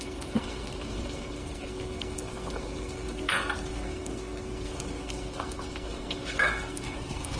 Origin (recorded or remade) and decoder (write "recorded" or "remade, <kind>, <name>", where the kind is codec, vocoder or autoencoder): remade, codec, SNAC